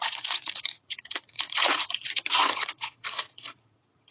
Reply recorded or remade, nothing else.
remade